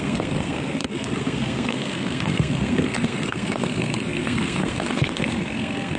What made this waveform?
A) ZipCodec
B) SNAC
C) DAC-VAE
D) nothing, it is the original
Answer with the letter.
B